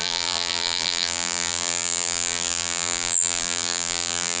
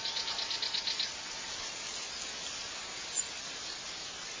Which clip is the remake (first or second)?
first